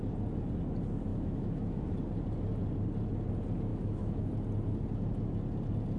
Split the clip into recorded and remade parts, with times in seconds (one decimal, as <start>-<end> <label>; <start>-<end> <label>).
0.0-1.1 recorded; 1.1-1.8 remade; 1.8-3.7 recorded; 3.7-4.3 remade; 4.3-6.0 recorded